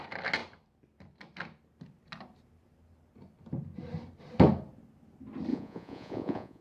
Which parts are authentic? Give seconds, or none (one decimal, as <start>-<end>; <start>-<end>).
0.0-5.5